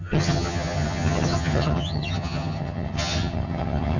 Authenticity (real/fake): fake